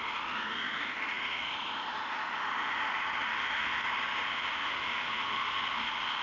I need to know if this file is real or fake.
fake